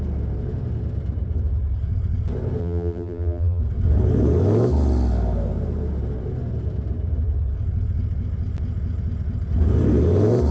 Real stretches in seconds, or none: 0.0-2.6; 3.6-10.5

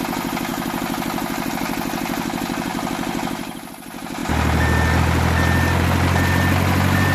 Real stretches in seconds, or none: 0.0-7.1

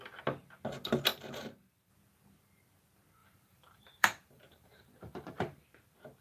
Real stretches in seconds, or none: 0.0-1.1; 1.9-3.2; 5.6-6.2

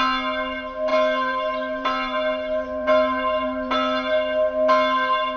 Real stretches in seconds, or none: 0.0-0.9; 4.1-5.4

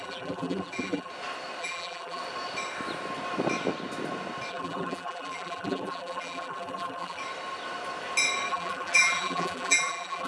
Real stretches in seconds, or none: 1.1-1.6; 2.2-4.5; 7.2-8.5

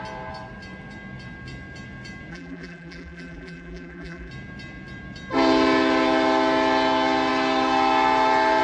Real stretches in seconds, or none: 0.0-2.3; 4.3-8.6

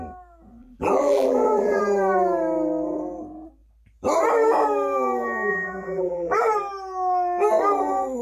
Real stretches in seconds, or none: 0.0-0.6; 1.8-5.5; 6.4-8.2